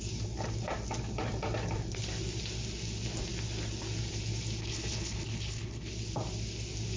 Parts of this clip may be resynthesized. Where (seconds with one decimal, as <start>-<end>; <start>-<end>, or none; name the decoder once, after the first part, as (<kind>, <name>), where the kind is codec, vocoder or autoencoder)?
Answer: 4.6-5.9 (codec, HILCodec)